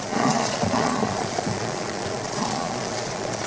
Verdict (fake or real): fake